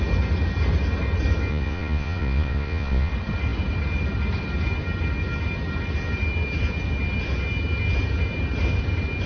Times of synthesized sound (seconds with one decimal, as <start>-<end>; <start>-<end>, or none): 1.5-3.1